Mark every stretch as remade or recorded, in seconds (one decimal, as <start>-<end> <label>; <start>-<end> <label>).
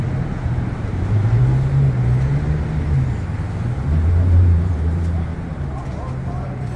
0.0-1.4 remade; 1.4-3.9 recorded; 3.9-5.3 remade; 5.3-6.2 recorded; 6.2-6.8 remade